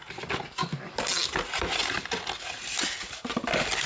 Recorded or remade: recorded